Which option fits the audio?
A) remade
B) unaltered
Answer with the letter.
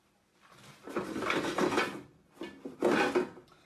B